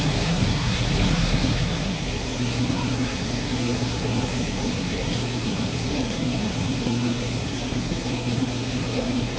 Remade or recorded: remade